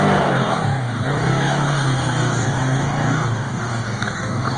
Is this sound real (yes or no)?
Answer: no